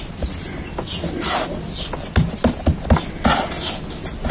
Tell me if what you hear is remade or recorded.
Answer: recorded